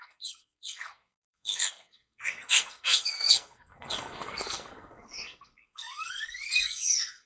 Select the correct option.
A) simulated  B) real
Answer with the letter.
A